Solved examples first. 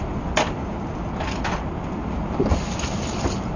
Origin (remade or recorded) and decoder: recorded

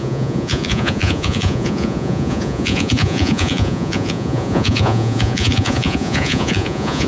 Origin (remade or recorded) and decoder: remade, vocoder, Vocos